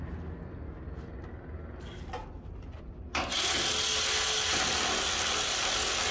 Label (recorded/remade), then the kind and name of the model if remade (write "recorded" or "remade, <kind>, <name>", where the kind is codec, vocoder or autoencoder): recorded